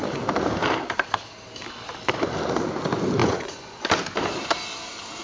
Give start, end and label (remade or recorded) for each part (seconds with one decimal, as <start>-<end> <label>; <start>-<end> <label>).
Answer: 0.0-3.2 recorded; 3.2-3.9 remade; 3.9-5.2 recorded

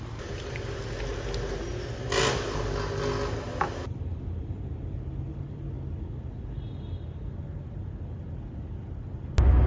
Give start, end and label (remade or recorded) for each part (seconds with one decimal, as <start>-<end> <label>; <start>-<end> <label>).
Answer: 0.0-9.7 recorded

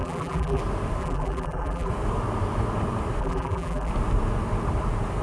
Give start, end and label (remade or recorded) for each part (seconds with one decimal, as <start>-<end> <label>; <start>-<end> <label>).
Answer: 0.0-0.6 remade; 0.6-1.0 recorded; 1.0-1.9 remade; 1.9-3.2 recorded; 3.2-3.9 remade; 3.9-5.2 recorded

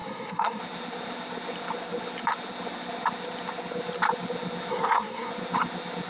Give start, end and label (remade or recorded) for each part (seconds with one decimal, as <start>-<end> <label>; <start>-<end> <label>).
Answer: 0.0-0.6 remade; 0.6-4.7 recorded; 4.7-5.3 remade; 5.3-6.1 recorded

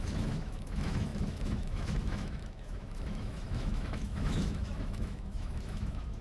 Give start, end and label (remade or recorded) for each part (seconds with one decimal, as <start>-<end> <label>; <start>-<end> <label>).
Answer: 0.0-6.2 remade